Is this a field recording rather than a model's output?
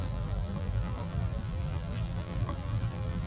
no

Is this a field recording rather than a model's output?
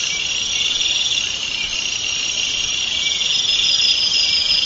yes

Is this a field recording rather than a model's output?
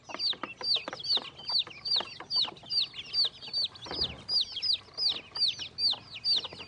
yes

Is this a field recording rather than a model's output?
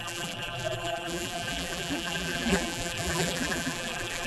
no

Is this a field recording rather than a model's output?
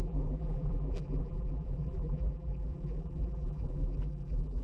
no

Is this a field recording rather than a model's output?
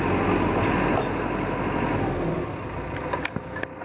yes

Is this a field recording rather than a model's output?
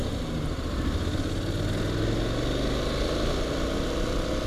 yes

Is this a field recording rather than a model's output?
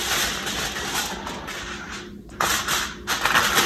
yes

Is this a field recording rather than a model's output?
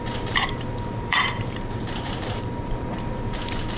no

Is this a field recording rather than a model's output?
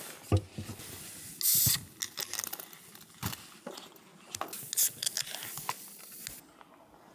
yes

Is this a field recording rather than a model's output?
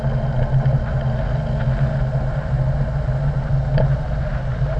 yes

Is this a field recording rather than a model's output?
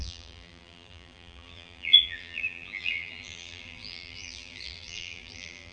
no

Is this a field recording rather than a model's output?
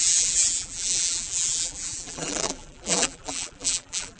no